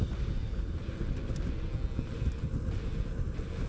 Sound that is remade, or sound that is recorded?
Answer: recorded